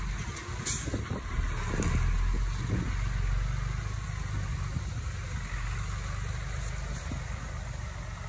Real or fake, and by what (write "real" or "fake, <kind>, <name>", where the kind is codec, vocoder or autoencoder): real